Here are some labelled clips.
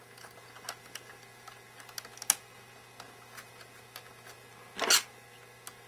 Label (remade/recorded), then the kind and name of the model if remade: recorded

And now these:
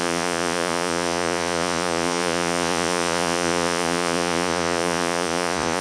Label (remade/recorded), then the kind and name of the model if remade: remade, vocoder, Vocos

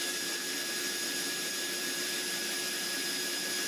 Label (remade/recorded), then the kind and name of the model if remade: remade, vocoder, BigVGAN v2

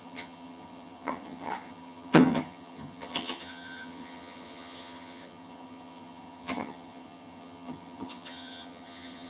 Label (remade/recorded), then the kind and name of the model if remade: remade, vocoder, HiFi-GAN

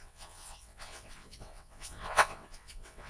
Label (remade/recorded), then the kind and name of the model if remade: remade, vocoder, WaveNeXt